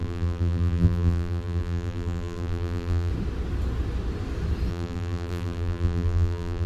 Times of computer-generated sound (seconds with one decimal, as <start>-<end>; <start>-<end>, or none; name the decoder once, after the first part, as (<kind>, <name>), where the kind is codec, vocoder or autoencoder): 0.0-3.1 (vocoder, BigVGAN v2); 4.7-6.7